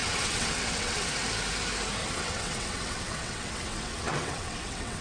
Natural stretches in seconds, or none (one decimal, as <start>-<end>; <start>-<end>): 1.1-2.0